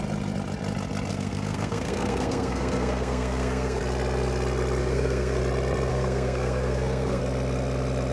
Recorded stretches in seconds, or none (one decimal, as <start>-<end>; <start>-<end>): 0.0-1.1; 3.8-4.8; 5.4-5.9; 7.2-8.1